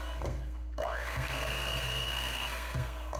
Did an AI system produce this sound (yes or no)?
yes